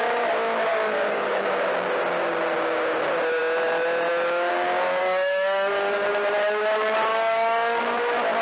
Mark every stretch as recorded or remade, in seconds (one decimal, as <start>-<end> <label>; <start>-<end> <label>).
0.0-0.7 recorded; 0.7-1.4 remade; 1.4-5.0 recorded; 5.0-6.1 remade; 6.1-7.1 recorded; 7.1-7.8 remade; 7.8-8.4 recorded